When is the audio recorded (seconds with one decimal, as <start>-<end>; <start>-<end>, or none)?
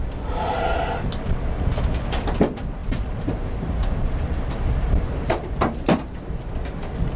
0.0-2.8; 6.5-7.2